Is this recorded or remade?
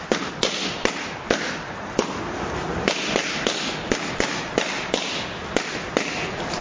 recorded